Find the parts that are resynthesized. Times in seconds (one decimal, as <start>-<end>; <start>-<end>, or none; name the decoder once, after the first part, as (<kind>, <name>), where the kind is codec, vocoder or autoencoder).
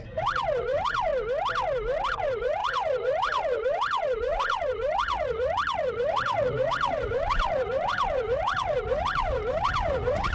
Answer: 0.0-1.1 (vocoder, Vocos); 2.1-10.3